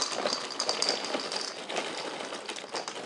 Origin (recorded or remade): recorded